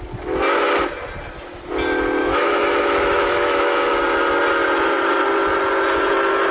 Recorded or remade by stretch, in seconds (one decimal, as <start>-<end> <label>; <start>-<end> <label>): 0.0-2.2 recorded; 2.2-3.9 remade; 3.9-6.5 recorded

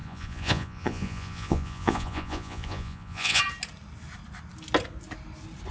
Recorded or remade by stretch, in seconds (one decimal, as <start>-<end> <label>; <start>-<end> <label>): 0.0-3.4 remade; 3.4-5.7 recorded

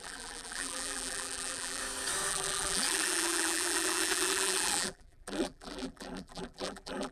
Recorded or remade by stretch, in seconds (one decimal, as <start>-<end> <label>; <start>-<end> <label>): 0.0-1.8 remade; 1.8-2.3 recorded; 2.3-7.1 remade

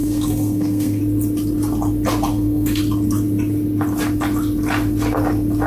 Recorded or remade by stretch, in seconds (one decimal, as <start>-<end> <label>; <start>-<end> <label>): 0.0-1.0 remade; 1.0-2.3 recorded; 2.3-2.8 remade; 2.8-5.7 recorded

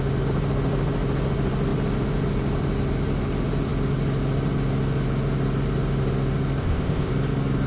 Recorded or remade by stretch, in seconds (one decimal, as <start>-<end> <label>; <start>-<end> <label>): 0.0-6.6 recorded; 6.6-7.1 remade; 7.1-7.7 recorded

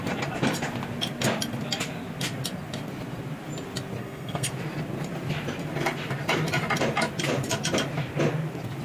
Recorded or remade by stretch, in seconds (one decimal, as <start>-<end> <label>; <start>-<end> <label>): 0.0-4.0 recorded; 4.0-4.5 remade; 4.5-8.8 recorded

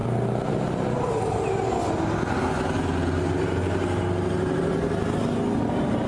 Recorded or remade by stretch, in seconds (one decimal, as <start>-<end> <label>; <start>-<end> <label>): 0.0-6.1 recorded